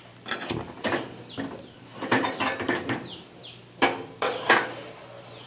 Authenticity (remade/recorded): remade